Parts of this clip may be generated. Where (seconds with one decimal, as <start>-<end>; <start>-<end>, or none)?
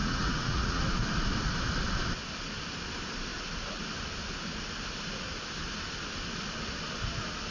0.0-0.8